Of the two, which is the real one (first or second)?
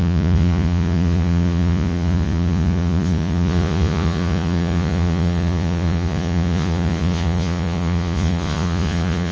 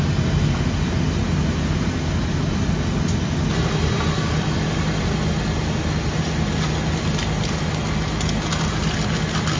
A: second